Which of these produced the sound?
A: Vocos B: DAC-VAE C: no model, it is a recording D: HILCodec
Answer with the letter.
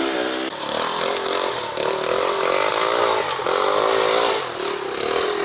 C